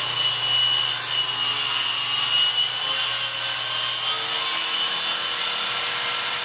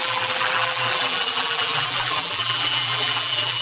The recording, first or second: first